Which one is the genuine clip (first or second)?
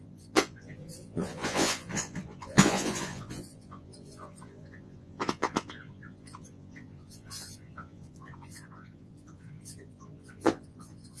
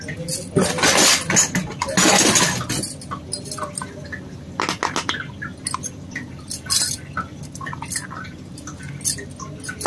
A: second